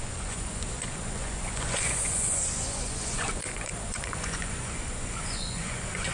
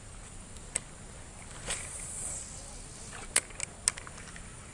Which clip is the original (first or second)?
second